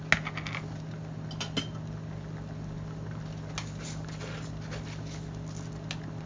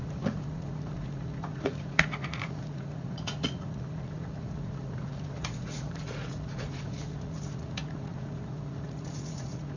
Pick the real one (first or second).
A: first